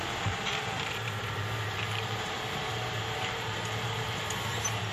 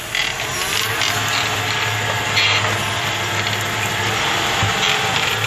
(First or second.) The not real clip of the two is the first